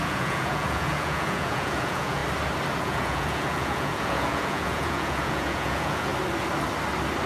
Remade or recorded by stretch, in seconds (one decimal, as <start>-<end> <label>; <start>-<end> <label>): 0.0-2.2 remade; 2.2-2.8 recorded; 2.8-6.1 remade; 6.1-7.3 recorded